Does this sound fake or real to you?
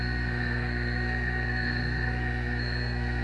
fake